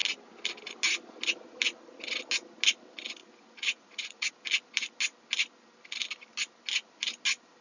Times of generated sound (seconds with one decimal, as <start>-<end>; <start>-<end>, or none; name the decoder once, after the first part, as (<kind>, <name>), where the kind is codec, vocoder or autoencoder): 3.2-4.3 (vocoder, Vocos)